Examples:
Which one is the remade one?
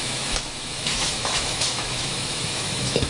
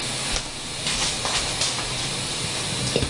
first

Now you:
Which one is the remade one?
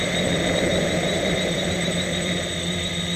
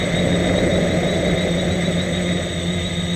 first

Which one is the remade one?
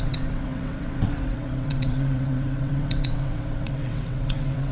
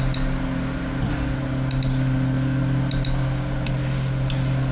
first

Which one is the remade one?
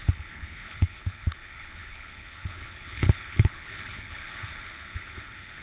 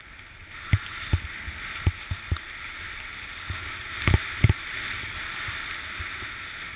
first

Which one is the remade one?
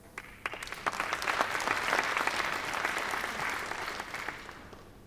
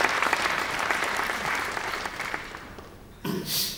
second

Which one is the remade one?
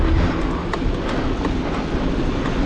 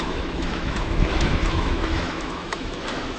second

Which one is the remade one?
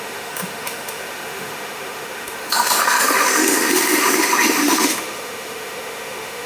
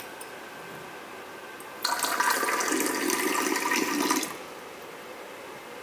first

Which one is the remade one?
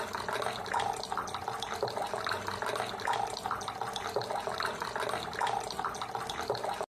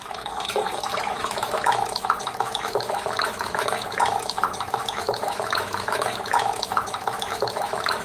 second